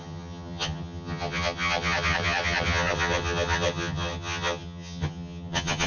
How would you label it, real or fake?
fake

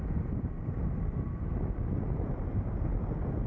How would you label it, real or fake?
real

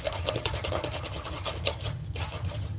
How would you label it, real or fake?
fake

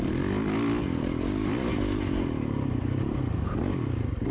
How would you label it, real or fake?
real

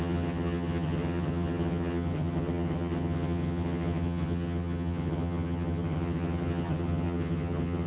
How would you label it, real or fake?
fake